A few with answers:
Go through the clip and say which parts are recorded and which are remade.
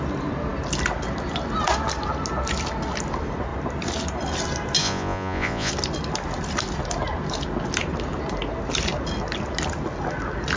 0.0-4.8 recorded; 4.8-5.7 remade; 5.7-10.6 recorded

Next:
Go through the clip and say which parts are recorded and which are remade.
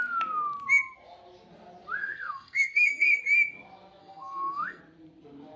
0.0-2.0 recorded; 2.0-3.2 remade; 3.2-4.0 recorded; 4.0-4.8 remade; 4.8-5.6 recorded